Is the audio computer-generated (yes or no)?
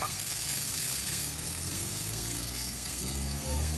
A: yes